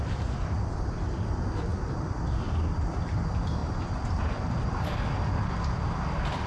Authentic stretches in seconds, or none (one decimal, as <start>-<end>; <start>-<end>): 0.0-1.7; 3.0-6.5